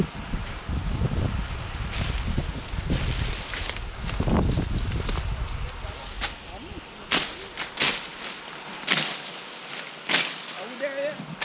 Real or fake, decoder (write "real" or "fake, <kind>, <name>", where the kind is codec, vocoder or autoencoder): real